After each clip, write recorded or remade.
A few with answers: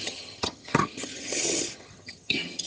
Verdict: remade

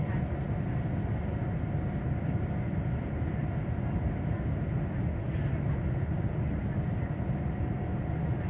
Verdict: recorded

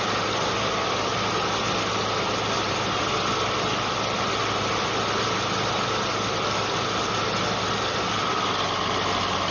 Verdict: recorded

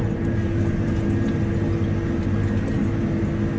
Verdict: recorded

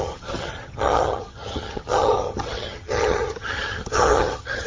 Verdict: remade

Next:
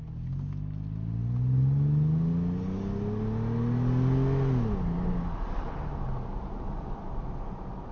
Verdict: recorded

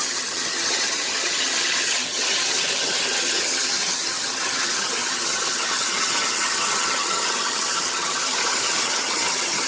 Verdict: remade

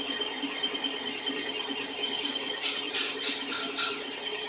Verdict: recorded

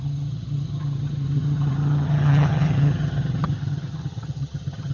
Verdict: remade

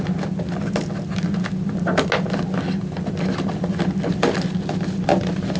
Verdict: recorded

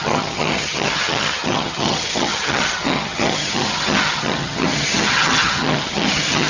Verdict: remade